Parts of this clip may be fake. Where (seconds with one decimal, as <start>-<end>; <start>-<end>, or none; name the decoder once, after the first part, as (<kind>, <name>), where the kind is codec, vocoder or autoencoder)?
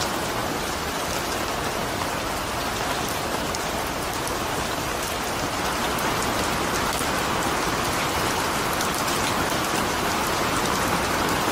none